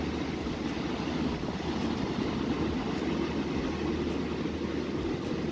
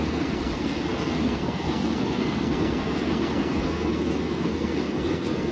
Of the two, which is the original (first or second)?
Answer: first